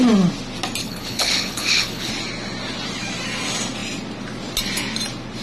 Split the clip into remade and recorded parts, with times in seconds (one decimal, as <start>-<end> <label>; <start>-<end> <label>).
0.0-0.8 recorded; 0.8-2.1 remade; 2.1-5.4 recorded